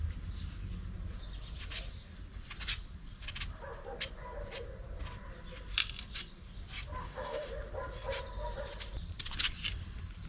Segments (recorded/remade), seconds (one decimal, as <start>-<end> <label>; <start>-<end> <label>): 0.0-7.0 recorded; 7.0-7.5 remade; 7.5-10.3 recorded